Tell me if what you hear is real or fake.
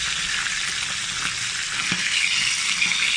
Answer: real